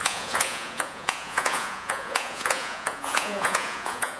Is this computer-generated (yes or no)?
yes